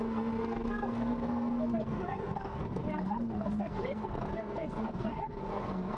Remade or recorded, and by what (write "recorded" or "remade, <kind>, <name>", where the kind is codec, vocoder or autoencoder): remade, codec, SNAC